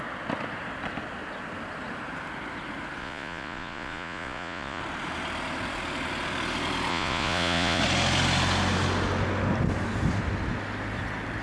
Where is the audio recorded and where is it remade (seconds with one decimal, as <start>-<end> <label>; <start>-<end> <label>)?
0.0-3.0 recorded; 3.0-4.8 remade; 4.8-6.9 recorded; 6.9-7.8 remade; 7.8-11.4 recorded